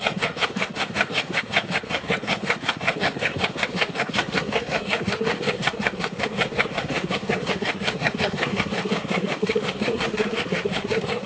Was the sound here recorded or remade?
remade